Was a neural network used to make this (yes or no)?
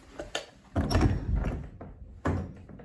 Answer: no